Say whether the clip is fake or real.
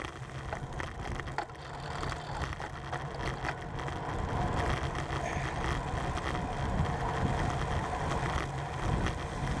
real